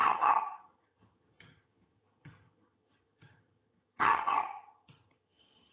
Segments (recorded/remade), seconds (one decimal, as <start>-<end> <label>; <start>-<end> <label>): 0.0-5.7 remade